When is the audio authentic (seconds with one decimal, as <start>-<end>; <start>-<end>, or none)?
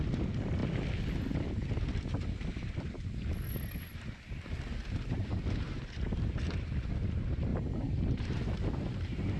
0.0-7.5